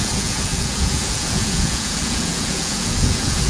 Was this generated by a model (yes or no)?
yes